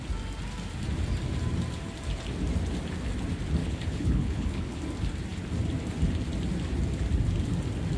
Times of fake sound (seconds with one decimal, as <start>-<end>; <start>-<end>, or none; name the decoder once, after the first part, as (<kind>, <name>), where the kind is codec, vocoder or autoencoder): 3.6-4.8 (codec, HILCodec)